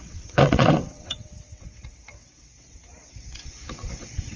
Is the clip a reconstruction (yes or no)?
yes